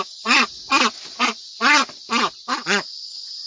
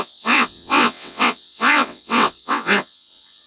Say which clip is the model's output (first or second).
second